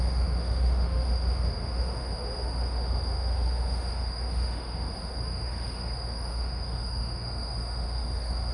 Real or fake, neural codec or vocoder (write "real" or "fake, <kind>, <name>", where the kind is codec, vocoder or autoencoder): fake, autoencoder, DAC-VAE